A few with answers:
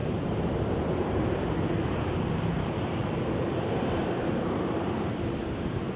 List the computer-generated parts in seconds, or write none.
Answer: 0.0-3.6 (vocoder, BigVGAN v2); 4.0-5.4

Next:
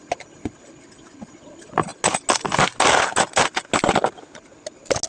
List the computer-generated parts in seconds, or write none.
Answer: none

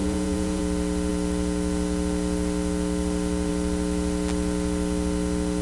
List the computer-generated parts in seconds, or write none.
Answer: 0.0-0.6 (vocoder, Vocos)